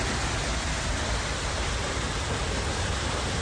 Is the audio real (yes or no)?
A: yes